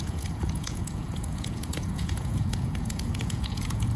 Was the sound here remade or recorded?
remade